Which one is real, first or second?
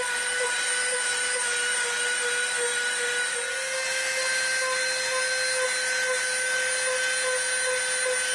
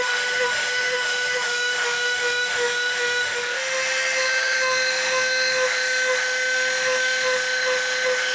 first